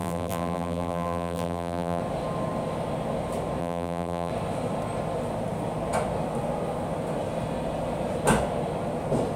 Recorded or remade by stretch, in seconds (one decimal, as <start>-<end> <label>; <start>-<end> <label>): 0.0-2.0 remade; 2.0-3.6 recorded; 3.6-4.3 remade; 4.3-9.4 recorded